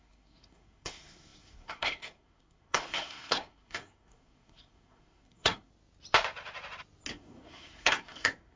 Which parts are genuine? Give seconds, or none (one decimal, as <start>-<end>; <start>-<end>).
5.7-7.1